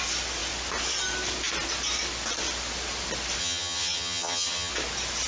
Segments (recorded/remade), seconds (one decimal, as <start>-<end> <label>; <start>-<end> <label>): 0.0-3.4 recorded; 3.4-4.7 remade; 4.7-5.3 recorded